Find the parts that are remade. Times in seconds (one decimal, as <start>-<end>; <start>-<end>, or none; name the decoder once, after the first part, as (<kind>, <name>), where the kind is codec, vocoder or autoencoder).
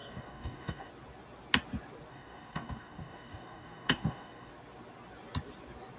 0.0-0.9 (codec, DAC); 2.1-4.5